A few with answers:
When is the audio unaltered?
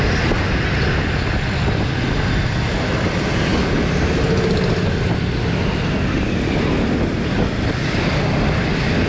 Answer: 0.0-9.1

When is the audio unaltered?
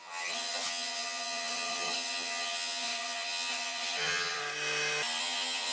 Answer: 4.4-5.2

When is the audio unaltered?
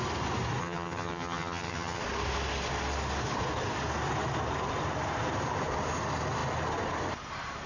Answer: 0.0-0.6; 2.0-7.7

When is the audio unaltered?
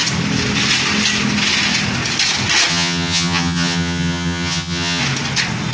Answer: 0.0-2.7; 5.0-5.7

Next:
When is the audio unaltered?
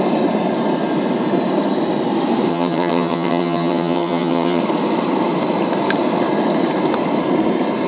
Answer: 0.0-2.5; 4.6-7.9